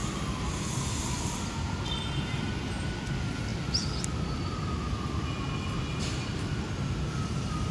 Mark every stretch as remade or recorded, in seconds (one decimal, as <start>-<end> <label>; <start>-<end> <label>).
0.0-7.7 recorded